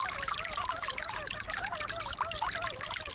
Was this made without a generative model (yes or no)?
yes